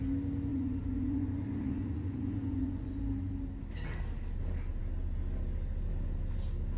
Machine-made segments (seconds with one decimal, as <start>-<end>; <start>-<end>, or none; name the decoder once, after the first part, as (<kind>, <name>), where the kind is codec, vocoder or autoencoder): 0.5-2.9 (vocoder, Vocos)